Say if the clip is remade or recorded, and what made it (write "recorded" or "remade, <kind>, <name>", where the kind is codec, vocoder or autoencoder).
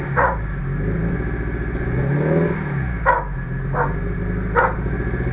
recorded